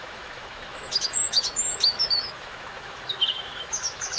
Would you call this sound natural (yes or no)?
no